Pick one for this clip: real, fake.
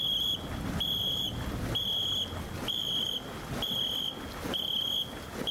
real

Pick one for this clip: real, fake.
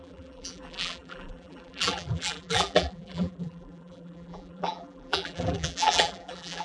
fake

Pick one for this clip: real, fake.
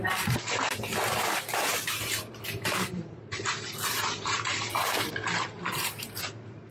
fake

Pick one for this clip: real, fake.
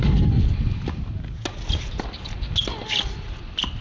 real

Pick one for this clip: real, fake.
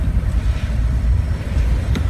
fake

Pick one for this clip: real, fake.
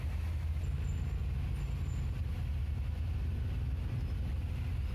real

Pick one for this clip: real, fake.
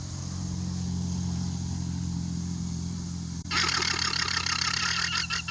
fake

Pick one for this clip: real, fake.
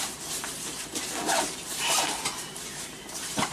fake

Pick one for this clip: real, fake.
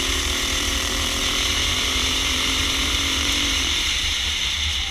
fake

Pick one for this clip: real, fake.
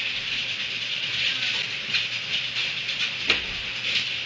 fake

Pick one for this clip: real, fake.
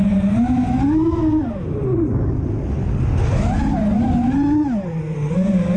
real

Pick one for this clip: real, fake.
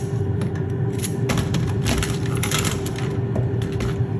fake